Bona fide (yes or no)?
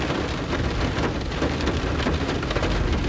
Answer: no